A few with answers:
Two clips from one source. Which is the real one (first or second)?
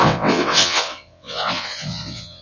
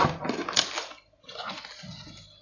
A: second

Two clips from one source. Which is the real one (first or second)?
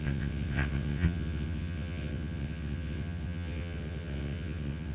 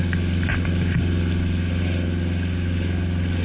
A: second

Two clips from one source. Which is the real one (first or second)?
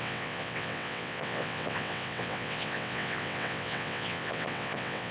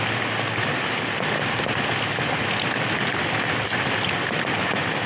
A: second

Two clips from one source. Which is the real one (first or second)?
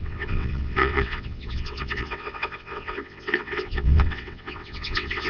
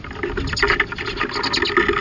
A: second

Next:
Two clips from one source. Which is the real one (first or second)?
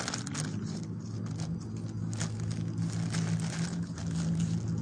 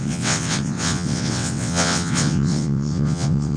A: first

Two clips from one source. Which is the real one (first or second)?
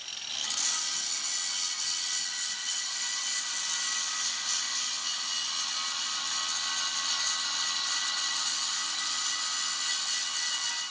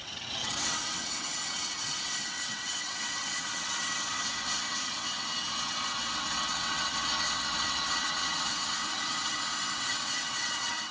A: first